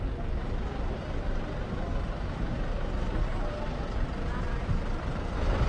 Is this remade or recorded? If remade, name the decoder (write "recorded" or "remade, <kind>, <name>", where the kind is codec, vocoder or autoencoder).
recorded